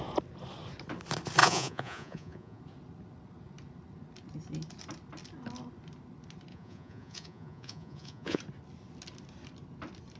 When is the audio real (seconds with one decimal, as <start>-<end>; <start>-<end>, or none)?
0.0-1.4; 2.6-6.5; 8.4-10.2